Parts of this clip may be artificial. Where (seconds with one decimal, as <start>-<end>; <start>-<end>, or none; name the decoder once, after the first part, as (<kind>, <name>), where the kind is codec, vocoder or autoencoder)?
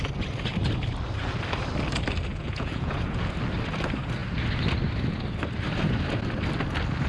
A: 2.3-3.3 (vocoder, Vocos)